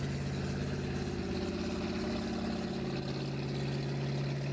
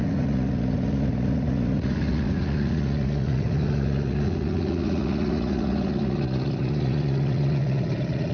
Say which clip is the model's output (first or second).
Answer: second